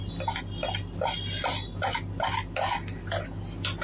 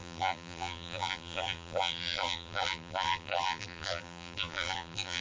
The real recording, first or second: first